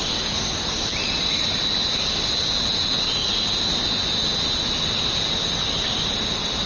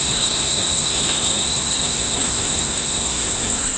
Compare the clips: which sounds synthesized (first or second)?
second